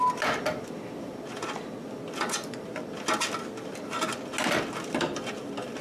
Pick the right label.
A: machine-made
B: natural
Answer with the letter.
B